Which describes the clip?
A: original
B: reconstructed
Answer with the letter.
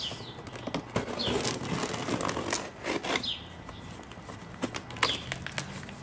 A